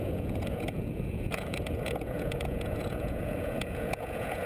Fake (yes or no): yes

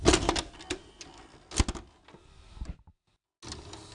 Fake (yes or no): no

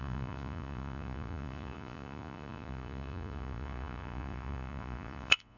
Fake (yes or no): yes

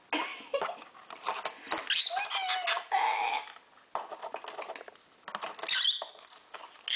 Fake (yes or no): no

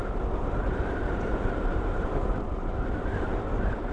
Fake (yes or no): yes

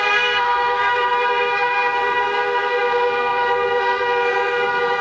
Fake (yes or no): yes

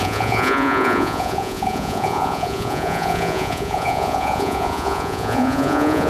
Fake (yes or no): yes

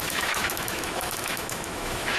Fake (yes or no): yes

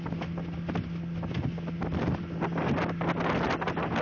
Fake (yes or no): no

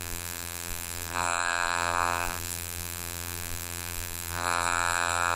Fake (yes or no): yes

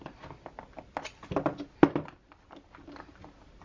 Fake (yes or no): no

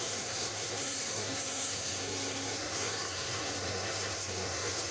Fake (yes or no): yes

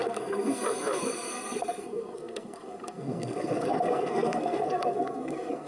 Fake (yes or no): yes